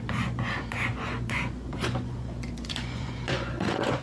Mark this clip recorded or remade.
remade